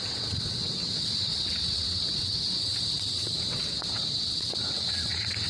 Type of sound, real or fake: fake